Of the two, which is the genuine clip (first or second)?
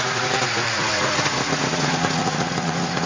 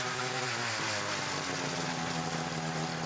second